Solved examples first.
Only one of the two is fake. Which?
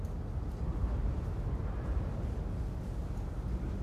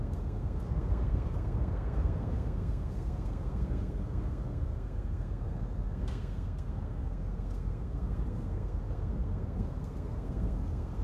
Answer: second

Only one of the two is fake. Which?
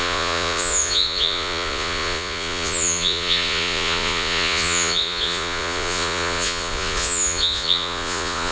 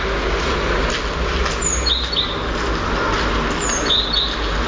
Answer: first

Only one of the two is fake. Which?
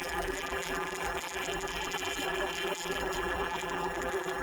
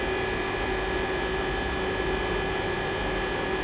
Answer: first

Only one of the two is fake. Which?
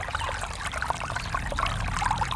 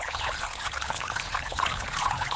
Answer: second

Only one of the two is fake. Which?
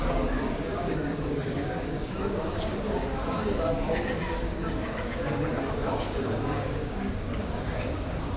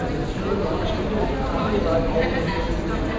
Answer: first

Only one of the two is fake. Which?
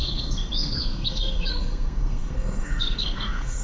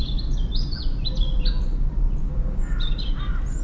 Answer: first